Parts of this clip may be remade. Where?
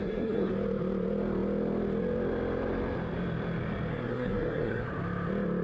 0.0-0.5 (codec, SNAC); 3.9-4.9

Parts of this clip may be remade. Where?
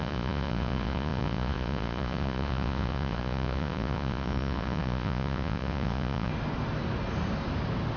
0.0-6.3 (vocoder, Vocos)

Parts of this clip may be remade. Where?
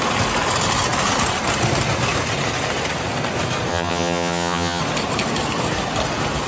3.7-4.8 (vocoder, HiFi-GAN)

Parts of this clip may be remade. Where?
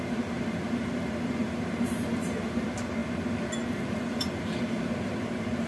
0.0-3.0 (vocoder, BigVGAN v2); 3.8-5.7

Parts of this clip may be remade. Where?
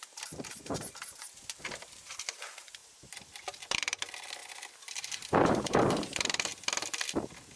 0.0-2.8 (vocoder, BigVGAN v2); 3.4-4.4; 5.3-6.5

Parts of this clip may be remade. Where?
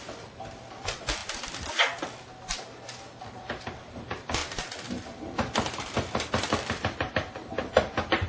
0.0-4.4 (vocoder, BigVGAN v2); 5.1-8.3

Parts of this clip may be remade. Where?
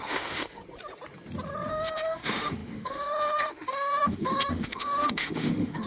0.0-0.6 (autoencoder, DAC-VAE); 1.7-5.9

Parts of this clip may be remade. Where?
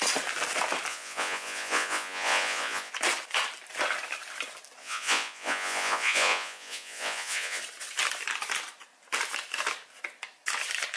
0.9-2.9 (vocoder, Vocos); 4.8-7.6